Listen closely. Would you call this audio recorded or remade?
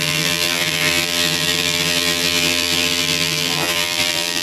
remade